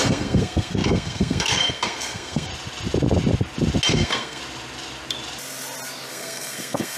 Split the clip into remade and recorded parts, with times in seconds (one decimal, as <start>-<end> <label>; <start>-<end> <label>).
0.0-2.5 remade; 2.5-3.9 recorded; 3.9-4.4 remade; 4.4-6.1 recorded; 6.1-7.0 remade